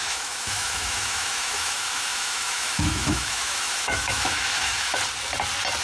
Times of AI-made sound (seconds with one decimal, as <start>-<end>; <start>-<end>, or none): 0.0-4.9